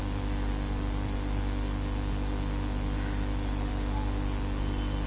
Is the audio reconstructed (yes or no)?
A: no